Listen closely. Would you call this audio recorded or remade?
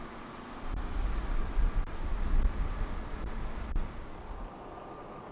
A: recorded